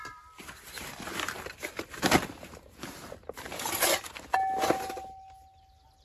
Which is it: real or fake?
real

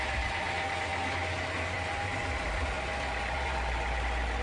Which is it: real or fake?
real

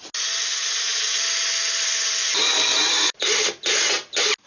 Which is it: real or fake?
real